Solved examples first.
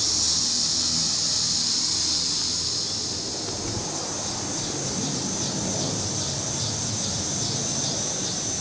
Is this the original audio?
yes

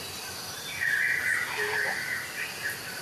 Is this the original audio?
yes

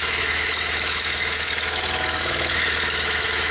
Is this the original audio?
no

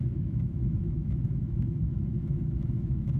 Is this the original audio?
no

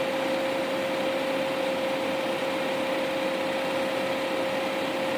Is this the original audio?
yes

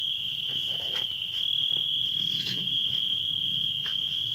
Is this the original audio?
no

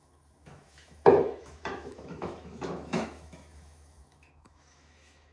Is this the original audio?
no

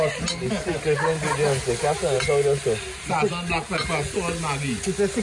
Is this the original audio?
yes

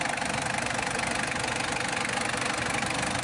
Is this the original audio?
yes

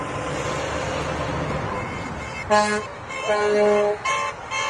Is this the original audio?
yes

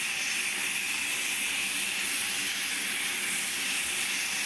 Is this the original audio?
yes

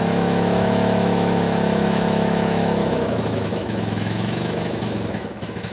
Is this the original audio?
no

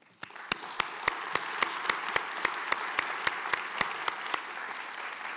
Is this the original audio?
yes